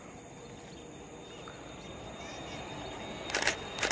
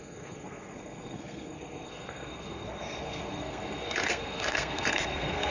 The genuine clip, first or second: first